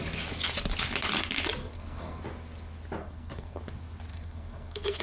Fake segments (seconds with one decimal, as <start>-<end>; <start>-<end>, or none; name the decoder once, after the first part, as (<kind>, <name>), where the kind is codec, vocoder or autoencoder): 1.6-2.2 (codec, SNAC); 3.0-3.6; 4.1-5.0

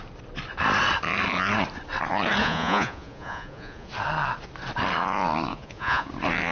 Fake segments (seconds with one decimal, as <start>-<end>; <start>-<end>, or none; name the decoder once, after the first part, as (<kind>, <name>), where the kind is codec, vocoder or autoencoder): 2.4-3.9 (vocoder, Vocos); 5.5-6.1

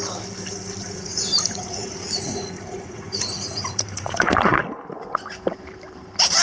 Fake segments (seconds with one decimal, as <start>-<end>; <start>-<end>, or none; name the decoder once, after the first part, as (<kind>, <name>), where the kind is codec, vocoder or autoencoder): 0.8-4.6 (vocoder, Vocos)

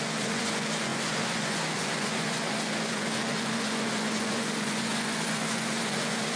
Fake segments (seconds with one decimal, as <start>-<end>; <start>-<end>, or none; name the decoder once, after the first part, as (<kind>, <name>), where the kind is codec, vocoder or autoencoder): 0.0-6.4 (vocoder, Vocos)

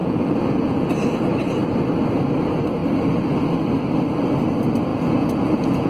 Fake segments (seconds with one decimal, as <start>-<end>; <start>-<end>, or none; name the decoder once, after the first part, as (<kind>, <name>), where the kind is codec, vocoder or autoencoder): 0.0-0.9 (vocoder, Vocos); 4.9-5.9

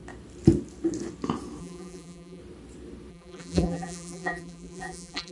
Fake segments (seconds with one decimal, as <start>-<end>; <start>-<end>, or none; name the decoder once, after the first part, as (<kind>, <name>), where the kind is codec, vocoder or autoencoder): 1.6-2.4 (vocoder, BigVGAN v2); 3.1-5.3